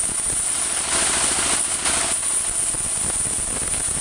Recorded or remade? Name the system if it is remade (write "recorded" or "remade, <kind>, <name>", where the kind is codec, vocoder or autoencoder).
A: recorded